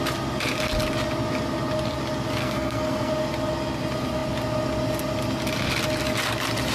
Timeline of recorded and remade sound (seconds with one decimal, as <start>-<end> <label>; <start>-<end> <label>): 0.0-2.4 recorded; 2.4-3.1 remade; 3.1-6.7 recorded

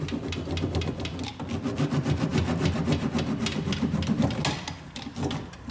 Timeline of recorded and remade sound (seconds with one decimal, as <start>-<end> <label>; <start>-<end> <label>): 0.0-5.7 recorded

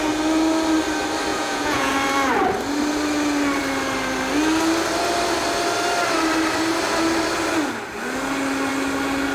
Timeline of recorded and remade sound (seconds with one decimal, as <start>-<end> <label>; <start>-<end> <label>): 0.0-1.3 recorded; 1.3-1.9 remade; 1.9-9.3 recorded

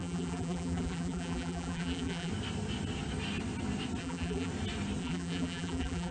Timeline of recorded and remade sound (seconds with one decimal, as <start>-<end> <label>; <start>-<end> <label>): 0.0-2.3 remade; 2.3-4.0 recorded; 4.0-4.5 remade; 4.5-5.0 recorded; 5.0-6.1 remade